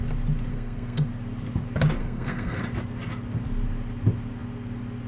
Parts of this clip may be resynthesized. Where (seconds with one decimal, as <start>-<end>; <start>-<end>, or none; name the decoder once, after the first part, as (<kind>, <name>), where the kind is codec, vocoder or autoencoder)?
0.5-1.1 (codec, SNAC); 2.0-2.6